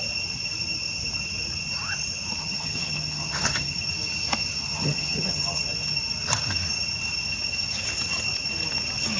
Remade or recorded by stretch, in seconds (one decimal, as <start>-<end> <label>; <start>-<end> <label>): 0.0-2.4 recorded; 2.4-3.8 remade; 3.8-4.7 recorded; 4.7-5.6 remade; 5.6-9.2 recorded